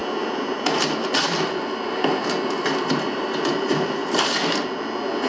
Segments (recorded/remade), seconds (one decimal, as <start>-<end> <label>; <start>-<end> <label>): 0.0-2.8 recorded; 2.8-4.0 remade; 4.0-5.3 recorded